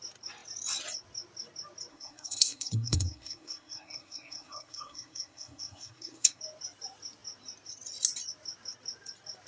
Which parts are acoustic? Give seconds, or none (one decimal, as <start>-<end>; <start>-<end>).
0.0-1.9; 6.4-9.5